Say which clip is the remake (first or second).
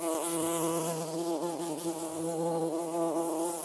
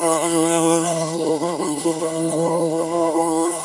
second